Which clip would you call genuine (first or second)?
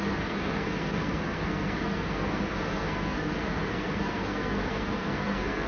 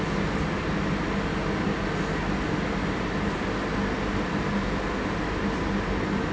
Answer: second